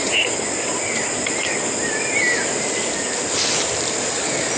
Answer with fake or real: real